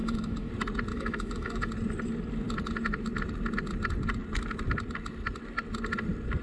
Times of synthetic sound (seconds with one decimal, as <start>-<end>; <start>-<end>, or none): 0.0-0.5; 0.9-1.7